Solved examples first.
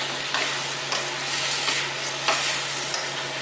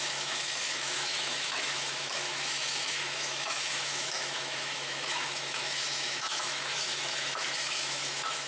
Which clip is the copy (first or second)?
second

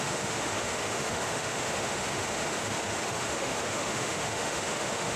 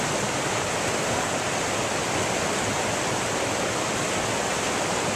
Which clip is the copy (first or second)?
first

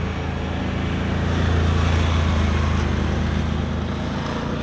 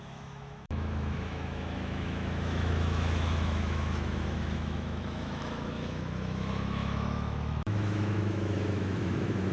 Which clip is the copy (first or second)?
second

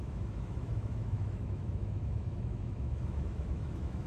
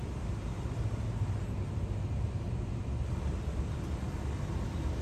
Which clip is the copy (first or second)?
first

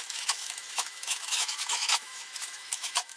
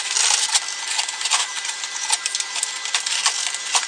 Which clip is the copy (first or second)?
first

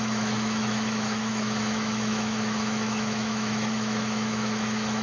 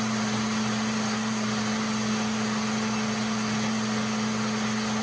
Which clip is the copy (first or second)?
first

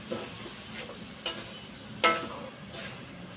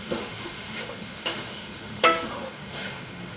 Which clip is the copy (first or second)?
second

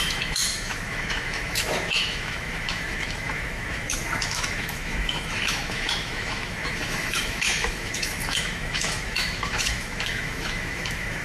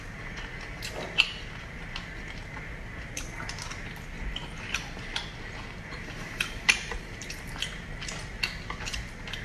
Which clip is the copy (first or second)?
first